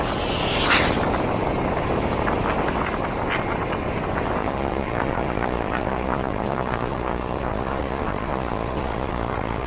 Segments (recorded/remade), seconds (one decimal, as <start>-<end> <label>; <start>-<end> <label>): 0.0-4.4 recorded; 4.4-9.7 remade